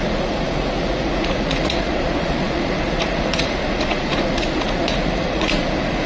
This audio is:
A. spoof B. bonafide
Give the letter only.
A